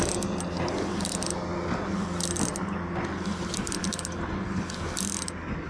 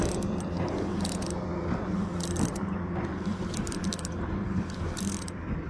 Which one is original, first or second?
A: first